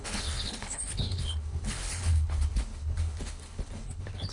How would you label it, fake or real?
fake